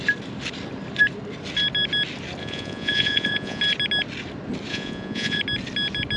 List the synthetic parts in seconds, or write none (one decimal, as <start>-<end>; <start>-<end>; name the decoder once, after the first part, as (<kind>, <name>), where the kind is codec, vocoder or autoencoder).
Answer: 2.4-3.6 (vocoder, Vocos); 4.7-5.4